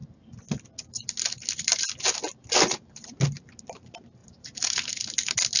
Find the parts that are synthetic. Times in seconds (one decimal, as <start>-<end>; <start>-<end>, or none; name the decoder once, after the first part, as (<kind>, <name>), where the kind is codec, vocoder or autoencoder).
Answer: none